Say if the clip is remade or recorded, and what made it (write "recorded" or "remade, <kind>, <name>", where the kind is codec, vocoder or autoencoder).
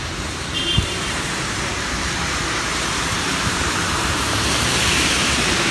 remade, vocoder, BigVGAN v2